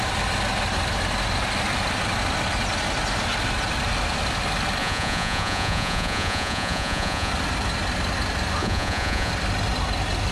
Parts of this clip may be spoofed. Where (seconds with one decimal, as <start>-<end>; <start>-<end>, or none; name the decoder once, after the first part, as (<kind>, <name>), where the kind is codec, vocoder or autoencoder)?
4.8-7.3 (vocoder, Vocos); 8.6-9.3